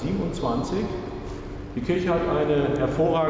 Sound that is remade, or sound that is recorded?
recorded